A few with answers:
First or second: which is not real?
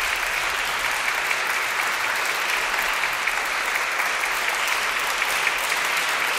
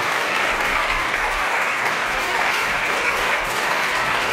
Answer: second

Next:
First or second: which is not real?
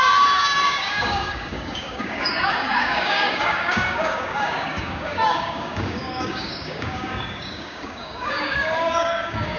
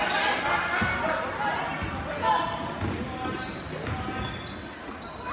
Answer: first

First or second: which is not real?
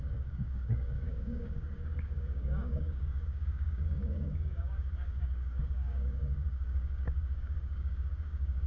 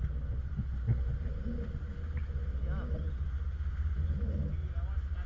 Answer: first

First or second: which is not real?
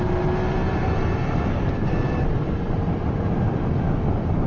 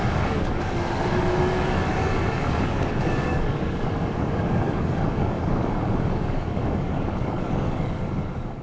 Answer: second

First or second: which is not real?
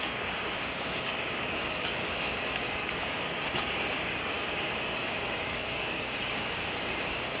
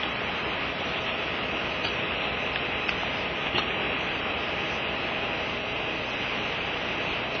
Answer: first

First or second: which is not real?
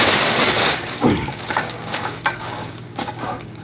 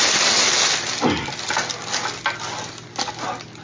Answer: first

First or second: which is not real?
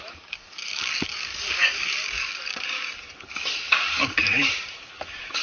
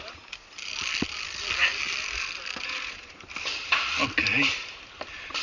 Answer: first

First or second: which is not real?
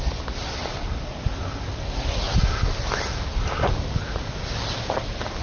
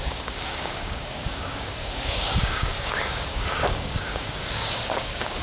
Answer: second